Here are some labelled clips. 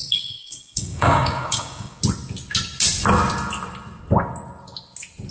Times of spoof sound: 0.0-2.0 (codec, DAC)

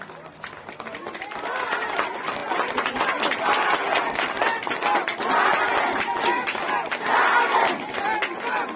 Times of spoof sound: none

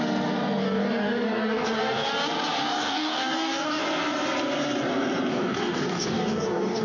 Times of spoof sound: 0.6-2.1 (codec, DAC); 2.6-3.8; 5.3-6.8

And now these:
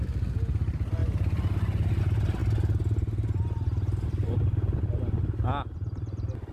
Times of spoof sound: none